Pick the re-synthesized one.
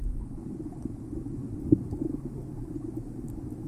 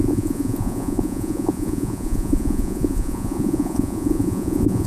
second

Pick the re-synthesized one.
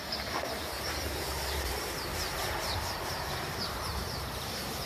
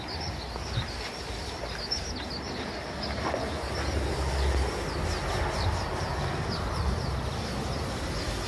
first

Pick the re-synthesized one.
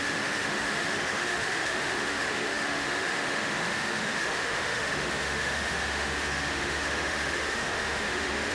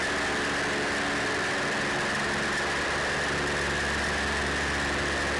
first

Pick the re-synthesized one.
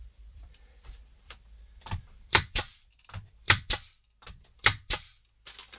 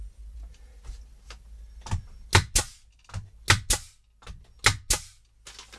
first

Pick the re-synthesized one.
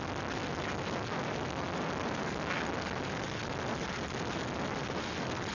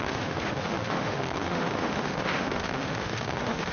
second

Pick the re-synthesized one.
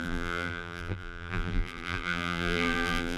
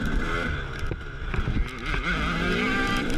first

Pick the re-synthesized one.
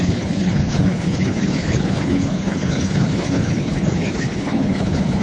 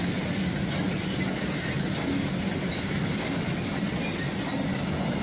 first